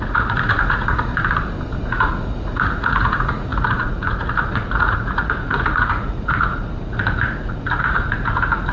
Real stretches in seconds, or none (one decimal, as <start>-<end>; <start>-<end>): 1.1-1.8